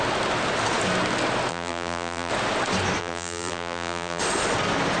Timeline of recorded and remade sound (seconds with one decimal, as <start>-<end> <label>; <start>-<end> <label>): 0.0-1.5 recorded; 1.5-2.3 remade; 2.3-3.0 recorded; 3.0-4.2 remade; 4.2-5.0 recorded